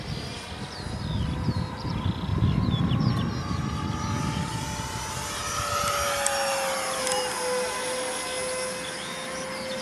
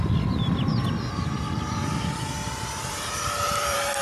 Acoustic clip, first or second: first